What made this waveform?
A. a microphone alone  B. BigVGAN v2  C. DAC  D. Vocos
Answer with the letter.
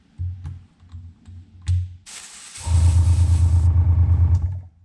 A